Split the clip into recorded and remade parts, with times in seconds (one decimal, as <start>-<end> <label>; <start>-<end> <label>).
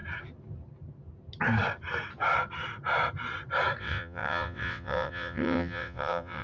0.0-3.8 recorded; 3.8-6.4 remade